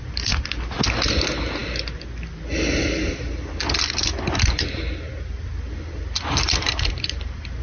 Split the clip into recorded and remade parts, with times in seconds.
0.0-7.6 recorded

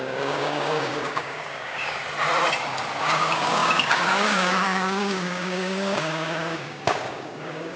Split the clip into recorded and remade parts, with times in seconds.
0.0-2.0 remade; 2.0-3.0 recorded; 3.0-7.8 remade

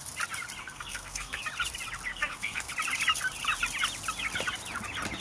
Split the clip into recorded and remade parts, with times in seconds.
0.0-0.6 recorded; 0.6-1.4 remade; 1.4-2.1 recorded; 2.1-2.7 remade; 2.7-5.2 recorded

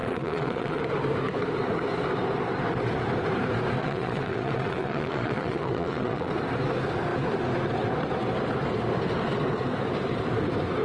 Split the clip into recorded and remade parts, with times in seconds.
0.0-0.8 remade; 0.8-3.8 recorded; 3.8-6.3 remade; 6.3-10.8 recorded

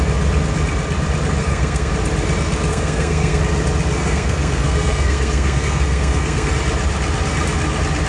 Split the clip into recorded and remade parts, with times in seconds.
0.0-1.4 recorded; 1.4-1.9 remade; 1.9-2.7 recorded; 2.7-3.4 remade; 3.4-4.0 recorded; 4.0-6.5 remade; 6.5-8.1 recorded

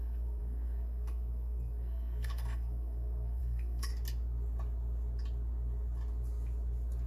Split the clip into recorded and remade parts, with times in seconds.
0.0-3.9 remade; 3.9-7.1 recorded